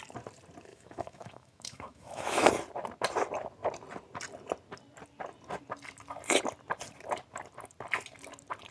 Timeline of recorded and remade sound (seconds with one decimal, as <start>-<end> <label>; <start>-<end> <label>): 0.0-0.7 recorded; 0.7-2.5 remade; 2.5-8.7 recorded